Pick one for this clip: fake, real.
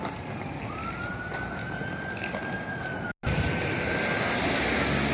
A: real